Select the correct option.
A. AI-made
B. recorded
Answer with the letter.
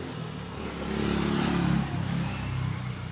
B